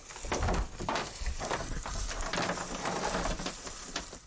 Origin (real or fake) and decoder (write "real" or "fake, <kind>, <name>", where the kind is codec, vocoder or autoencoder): real